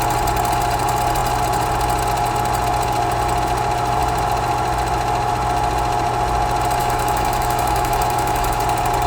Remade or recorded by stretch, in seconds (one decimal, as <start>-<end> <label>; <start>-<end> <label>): 0.0-6.8 recorded; 6.8-8.6 remade; 8.6-9.1 recorded